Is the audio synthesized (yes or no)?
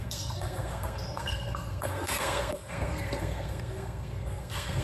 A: yes